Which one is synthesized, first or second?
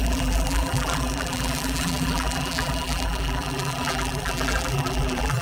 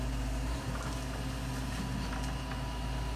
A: first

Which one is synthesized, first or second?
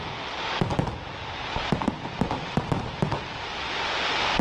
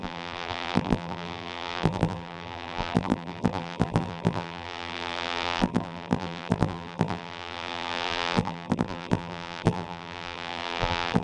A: second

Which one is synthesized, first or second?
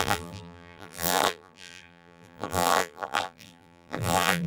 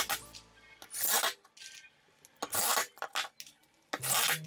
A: first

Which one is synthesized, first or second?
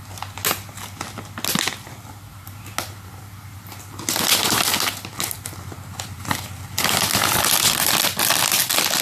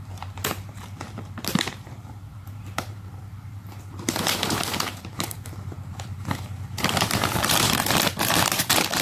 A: second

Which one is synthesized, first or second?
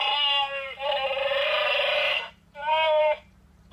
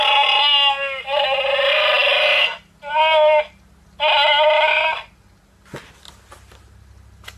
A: first